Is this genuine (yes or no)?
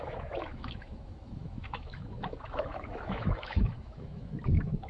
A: no